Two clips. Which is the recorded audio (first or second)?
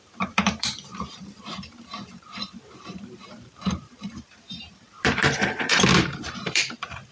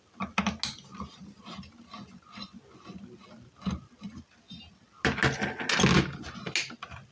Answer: second